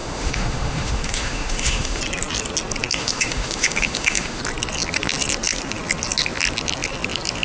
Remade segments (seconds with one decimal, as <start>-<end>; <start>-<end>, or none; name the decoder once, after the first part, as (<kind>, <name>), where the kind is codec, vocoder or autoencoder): 0.0-2.0 (autoencoder, DAC-VAE); 3.0-4.4